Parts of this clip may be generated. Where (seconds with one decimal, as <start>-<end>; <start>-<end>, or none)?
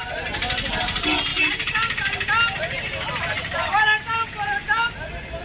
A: none